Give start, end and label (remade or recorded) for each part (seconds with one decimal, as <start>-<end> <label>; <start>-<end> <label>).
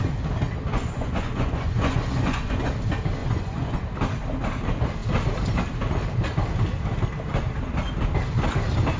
0.0-0.7 recorded; 0.7-2.7 remade; 2.7-3.2 recorded; 3.2-3.8 remade; 3.8-9.0 recorded